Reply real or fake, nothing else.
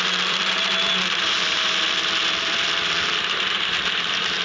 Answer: fake